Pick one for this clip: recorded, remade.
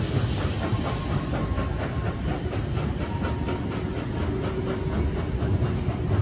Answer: recorded